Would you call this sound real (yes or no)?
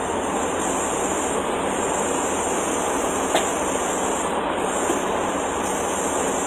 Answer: yes